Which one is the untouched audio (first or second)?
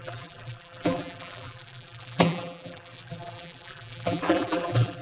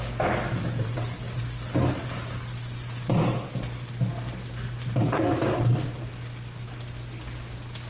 second